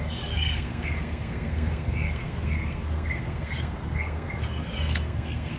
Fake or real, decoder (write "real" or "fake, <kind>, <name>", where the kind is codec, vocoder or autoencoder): fake, codec, SNAC